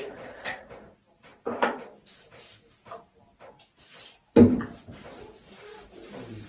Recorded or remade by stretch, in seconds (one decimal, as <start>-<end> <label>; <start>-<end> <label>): 0.0-6.5 recorded